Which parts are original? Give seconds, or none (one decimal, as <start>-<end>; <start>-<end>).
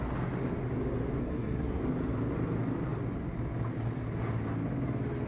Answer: 0.0-1.2; 1.8-5.3